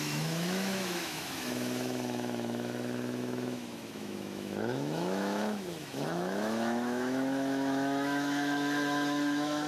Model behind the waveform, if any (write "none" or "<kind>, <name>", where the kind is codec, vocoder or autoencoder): autoencoder, DAC-VAE